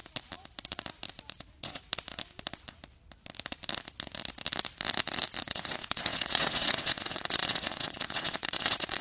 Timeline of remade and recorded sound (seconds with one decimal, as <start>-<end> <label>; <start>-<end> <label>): 0.0-1.3 recorded; 1.3-1.8 remade; 1.8-5.4 recorded; 5.4-9.0 remade